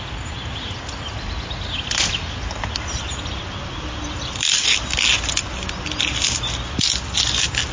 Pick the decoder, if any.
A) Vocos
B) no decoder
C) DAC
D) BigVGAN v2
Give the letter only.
B